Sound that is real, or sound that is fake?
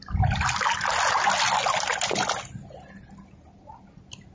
real